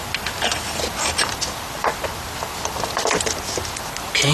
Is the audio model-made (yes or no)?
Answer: no